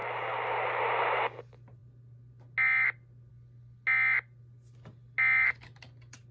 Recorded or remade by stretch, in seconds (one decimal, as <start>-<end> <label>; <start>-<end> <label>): 0.0-6.3 recorded